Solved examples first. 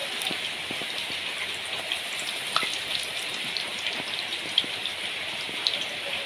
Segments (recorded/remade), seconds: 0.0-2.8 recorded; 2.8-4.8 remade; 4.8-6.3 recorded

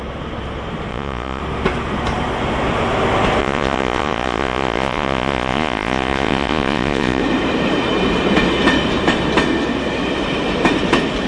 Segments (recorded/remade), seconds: 0.0-0.9 recorded; 0.9-1.4 remade; 1.4-3.4 recorded; 3.4-7.2 remade; 7.2-11.3 recorded

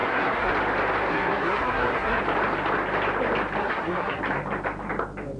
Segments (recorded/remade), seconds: 0.0-0.5 remade; 0.5-1.1 recorded; 1.1-2.2 remade; 2.2-3.6 recorded; 3.6-4.2 remade; 4.2-5.4 recorded

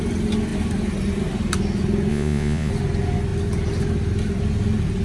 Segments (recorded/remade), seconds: 0.0-2.1 recorded; 2.1-2.7 remade; 2.7-5.0 recorded

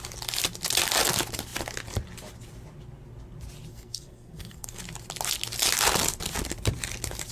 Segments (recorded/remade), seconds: 0.0-3.7 recorded; 3.7-4.8 remade; 4.8-7.3 recorded

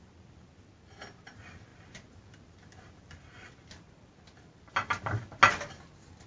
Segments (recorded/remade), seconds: 0.0-6.3 recorded

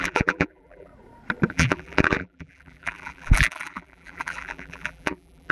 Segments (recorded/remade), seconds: 0.0-0.9 remade; 0.9-1.5 recorded; 1.5-5.5 remade